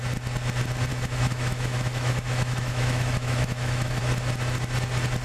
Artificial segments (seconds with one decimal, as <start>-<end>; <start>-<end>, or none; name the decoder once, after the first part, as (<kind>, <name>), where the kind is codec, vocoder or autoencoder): 0.9-4.0 (autoencoder, DAC-VAE)